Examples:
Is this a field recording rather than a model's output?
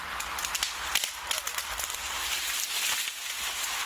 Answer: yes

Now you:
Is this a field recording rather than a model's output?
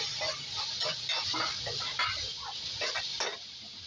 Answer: yes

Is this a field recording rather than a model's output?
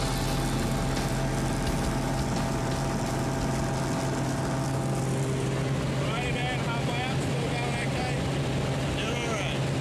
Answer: yes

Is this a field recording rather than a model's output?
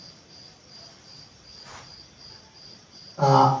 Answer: yes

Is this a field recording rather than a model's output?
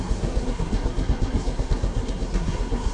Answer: no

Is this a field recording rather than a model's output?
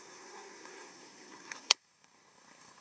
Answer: no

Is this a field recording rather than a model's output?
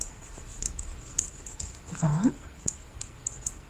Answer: no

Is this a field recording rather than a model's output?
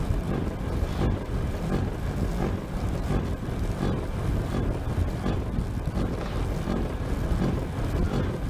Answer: yes